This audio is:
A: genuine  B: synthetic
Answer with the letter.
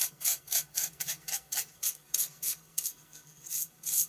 B